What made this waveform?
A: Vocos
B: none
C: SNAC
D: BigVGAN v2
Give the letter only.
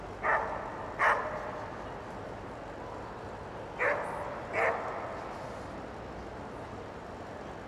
B